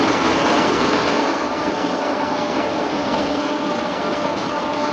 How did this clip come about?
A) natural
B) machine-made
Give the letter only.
B